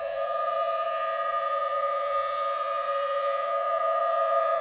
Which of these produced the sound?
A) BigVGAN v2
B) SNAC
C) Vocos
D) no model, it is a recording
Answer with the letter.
C